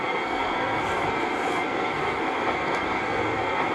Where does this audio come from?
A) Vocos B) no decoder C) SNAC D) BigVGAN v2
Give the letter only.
C